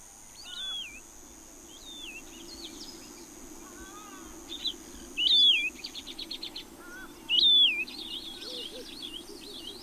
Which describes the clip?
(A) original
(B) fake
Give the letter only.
A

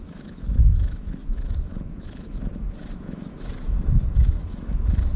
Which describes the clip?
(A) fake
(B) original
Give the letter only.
A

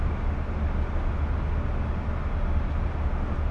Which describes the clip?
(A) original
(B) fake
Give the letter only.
A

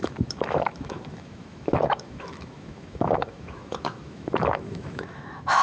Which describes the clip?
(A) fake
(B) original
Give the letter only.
A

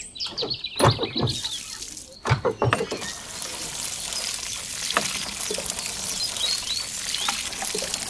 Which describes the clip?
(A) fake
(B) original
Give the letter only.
B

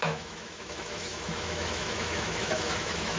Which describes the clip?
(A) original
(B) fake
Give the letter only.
B